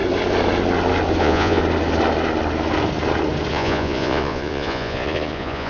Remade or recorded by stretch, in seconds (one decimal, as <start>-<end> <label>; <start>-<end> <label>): 0.0-1.2 recorded; 1.2-1.6 remade; 1.6-3.5 recorded; 3.5-5.7 remade